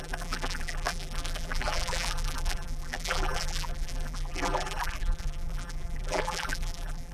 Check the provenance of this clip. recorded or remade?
remade